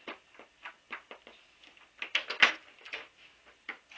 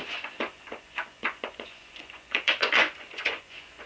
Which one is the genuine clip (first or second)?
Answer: first